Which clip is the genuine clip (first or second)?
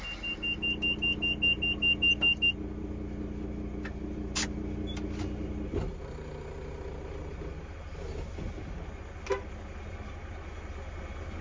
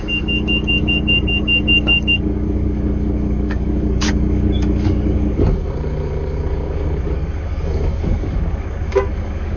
first